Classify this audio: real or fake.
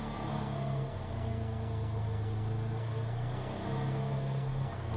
fake